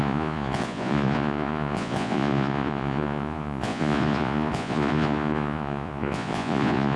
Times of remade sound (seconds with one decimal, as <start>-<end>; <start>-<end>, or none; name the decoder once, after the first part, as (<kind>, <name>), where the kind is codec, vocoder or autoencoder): 0.0-7.0 (vocoder, Vocos)